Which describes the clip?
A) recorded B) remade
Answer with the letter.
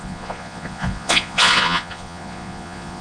B